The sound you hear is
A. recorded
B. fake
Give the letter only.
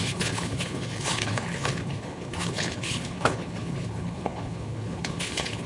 B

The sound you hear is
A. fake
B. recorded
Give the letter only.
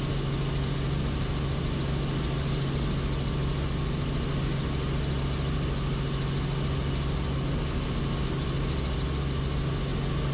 B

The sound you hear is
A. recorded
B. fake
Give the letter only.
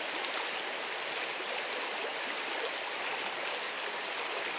A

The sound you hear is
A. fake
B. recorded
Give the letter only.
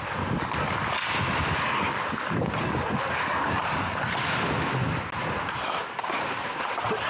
B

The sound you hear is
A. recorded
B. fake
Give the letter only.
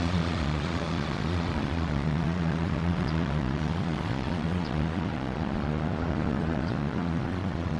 B